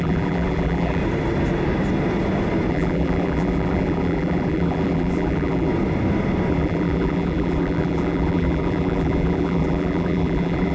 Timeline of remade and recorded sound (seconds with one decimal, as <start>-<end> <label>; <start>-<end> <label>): 0.0-1.0 remade; 1.0-2.7 recorded; 2.7-5.7 remade; 5.7-6.5 recorded; 6.5-10.7 remade